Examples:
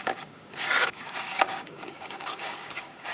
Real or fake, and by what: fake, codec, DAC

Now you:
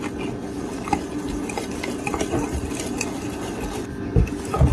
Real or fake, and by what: real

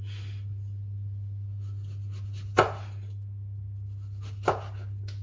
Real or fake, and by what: real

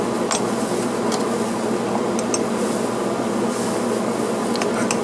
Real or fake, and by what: real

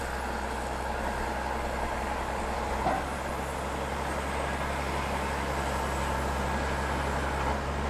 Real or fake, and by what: real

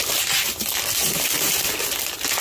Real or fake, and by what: fake, vocoder, BigVGAN v2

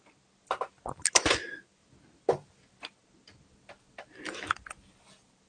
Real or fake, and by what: real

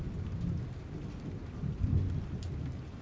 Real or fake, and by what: real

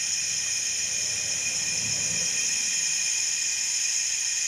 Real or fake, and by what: real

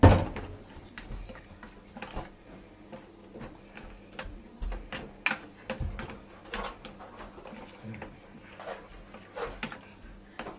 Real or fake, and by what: real